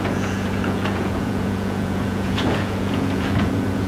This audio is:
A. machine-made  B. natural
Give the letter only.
A